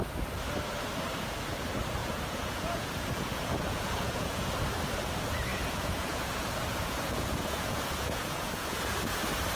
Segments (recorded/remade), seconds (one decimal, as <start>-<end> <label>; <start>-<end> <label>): 0.0-2.0 recorded; 2.0-4.5 remade; 4.5-5.5 recorded; 5.5-9.2 remade; 9.2-9.6 recorded